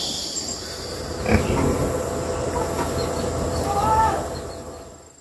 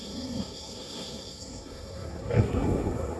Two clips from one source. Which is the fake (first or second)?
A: second